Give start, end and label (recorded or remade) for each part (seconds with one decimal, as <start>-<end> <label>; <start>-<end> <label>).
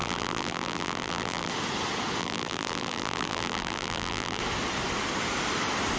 0.0-1.5 remade; 1.5-2.2 recorded; 2.2-4.4 remade; 4.4-6.0 recorded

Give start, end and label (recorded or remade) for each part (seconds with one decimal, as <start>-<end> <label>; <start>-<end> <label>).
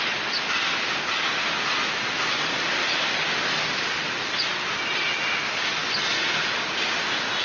0.0-7.4 recorded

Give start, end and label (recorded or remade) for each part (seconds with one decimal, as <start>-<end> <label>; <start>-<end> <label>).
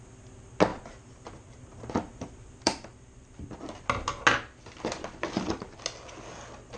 0.0-0.7 recorded; 0.7-3.4 remade; 3.4-6.8 recorded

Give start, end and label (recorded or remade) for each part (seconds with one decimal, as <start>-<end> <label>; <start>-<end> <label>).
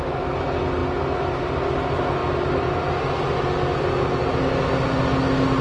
0.0-5.6 recorded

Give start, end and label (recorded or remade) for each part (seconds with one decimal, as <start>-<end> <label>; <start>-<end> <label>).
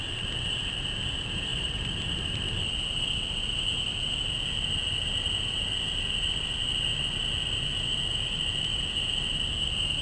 0.0-10.0 recorded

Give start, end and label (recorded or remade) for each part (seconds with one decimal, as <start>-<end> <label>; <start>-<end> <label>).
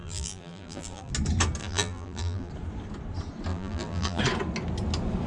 0.0-1.1 remade; 1.1-1.6 recorded; 1.6-2.5 remade; 2.5-3.5 recorded; 3.5-4.2 remade; 4.2-5.3 recorded